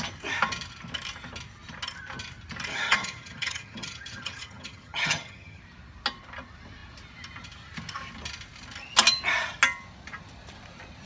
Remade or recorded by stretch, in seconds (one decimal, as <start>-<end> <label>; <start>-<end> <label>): 0.0-2.7 recorded; 2.7-5.6 remade; 5.6-11.1 recorded